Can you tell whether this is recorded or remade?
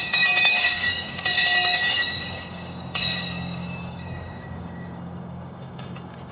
remade